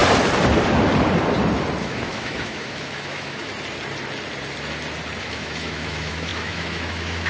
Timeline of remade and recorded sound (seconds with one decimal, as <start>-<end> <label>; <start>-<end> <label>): 0.0-1.8 recorded; 1.8-3.5 remade; 3.5-5.2 recorded; 5.2-7.3 remade